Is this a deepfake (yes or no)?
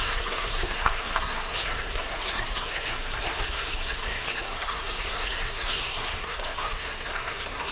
yes